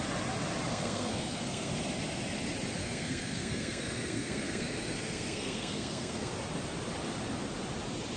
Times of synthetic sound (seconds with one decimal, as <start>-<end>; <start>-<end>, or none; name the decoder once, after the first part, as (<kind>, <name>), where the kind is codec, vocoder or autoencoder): 0.7-1.7 (codec, SNAC); 2.8-6.3